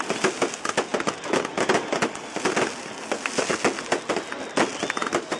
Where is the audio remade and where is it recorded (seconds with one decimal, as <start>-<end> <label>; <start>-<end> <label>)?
0.0-5.4 recorded

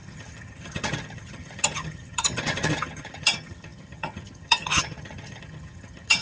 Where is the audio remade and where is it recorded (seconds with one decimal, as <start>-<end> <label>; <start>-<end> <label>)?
0.0-6.2 remade

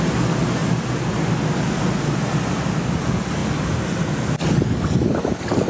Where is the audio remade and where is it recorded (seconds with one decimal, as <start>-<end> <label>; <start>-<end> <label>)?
0.0-5.7 recorded

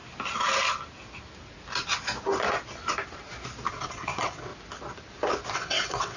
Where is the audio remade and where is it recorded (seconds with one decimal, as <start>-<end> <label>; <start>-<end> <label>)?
0.0-3.7 recorded; 3.7-4.5 remade; 4.5-5.5 recorded; 5.5-6.2 remade

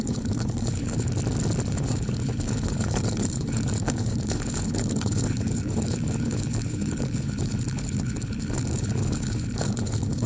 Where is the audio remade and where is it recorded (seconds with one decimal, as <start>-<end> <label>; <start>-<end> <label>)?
0.0-1.1 remade; 1.1-1.7 recorded; 1.7-10.3 remade

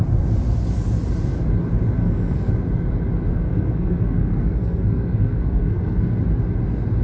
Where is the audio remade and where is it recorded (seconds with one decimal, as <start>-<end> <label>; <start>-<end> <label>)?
0.0-2.0 recorded; 2.0-2.5 remade; 2.5-3.3 recorded; 3.3-6.2 remade; 6.2-7.0 recorded

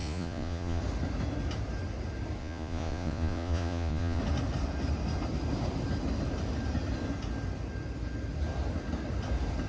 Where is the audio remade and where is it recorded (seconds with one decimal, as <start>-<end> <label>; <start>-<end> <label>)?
0.0-0.8 remade; 0.8-2.4 recorded; 2.4-4.2 remade; 4.2-9.7 recorded

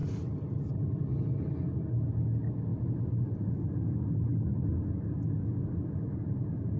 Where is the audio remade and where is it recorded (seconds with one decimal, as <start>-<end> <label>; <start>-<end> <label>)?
0.0-0.8 remade; 0.8-2.7 recorded; 2.7-3.5 remade; 3.5-6.8 recorded